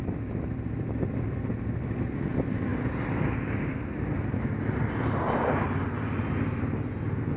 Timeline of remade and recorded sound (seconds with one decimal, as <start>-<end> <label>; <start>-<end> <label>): 0.0-7.4 recorded